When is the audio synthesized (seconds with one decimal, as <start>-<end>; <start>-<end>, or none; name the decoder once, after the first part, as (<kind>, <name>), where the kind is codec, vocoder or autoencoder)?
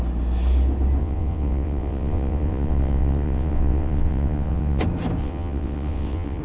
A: 1.0-4.8 (vocoder, WaveNeXt); 5.2-6.4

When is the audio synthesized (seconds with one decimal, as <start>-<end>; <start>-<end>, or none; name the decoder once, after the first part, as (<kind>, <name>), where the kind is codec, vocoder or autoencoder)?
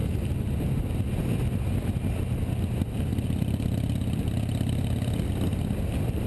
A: 3.1-5.3 (vocoder, BigVGAN v2)